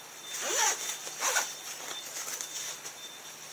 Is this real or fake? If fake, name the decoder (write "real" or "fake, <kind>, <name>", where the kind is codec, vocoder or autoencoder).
real